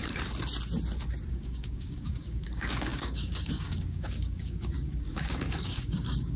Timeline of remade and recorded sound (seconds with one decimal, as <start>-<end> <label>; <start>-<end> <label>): 0.0-1.3 recorded; 1.3-6.4 remade